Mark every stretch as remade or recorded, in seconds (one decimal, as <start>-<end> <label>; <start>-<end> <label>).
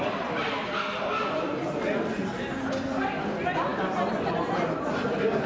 0.0-5.5 recorded